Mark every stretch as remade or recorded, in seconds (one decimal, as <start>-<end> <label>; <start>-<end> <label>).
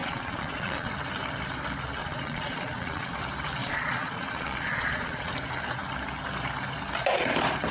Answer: 0.0-0.9 remade; 0.9-2.0 recorded; 2.0-3.2 remade; 3.2-3.6 recorded; 3.6-5.3 remade; 5.3-7.7 recorded